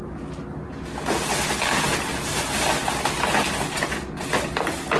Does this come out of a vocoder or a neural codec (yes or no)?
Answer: no